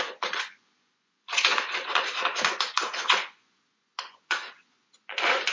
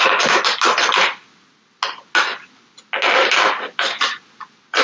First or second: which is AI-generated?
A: first